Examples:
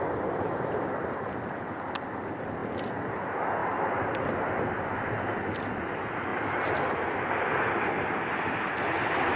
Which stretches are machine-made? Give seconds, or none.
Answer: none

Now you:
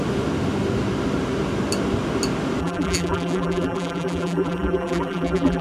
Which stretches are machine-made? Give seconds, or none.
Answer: 2.6-5.6

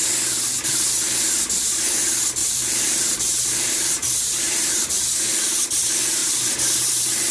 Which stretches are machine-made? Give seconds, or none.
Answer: 2.4-4.9; 6.2-7.3

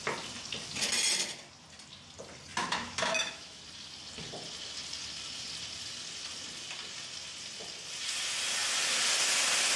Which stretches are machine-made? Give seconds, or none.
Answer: 2.6-3.6

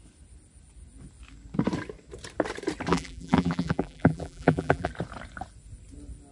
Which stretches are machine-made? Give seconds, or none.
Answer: 2.9-4.9